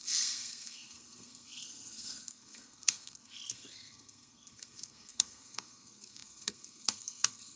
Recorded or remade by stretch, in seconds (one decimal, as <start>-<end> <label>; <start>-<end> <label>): 0.0-7.6 remade

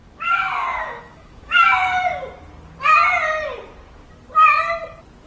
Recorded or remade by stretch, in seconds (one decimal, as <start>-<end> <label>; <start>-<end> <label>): 0.0-1.8 remade; 1.8-5.3 recorded